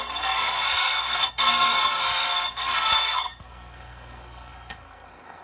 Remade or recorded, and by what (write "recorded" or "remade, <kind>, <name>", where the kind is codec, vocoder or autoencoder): remade, codec, SNAC